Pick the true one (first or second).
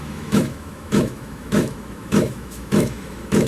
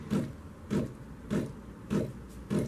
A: second